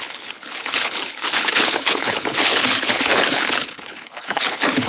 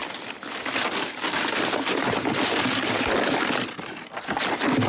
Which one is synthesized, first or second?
first